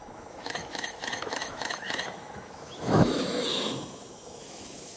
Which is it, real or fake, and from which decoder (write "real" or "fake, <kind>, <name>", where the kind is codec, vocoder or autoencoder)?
fake, autoencoder, DAC-VAE